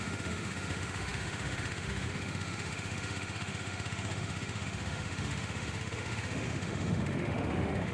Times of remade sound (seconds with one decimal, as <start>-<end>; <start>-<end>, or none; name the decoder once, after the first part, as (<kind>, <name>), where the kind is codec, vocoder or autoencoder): 0.0-7.9 (autoencoder, DAC-VAE)